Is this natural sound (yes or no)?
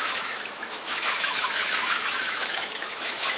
no